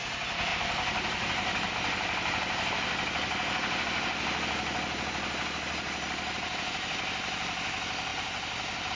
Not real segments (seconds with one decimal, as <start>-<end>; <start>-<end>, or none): none